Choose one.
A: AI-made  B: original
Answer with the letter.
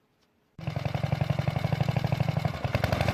B